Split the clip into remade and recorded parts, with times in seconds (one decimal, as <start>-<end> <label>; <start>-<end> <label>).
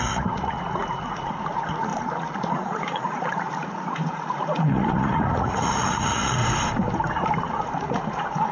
0.0-6.4 remade; 6.4-7.5 recorded; 7.5-8.5 remade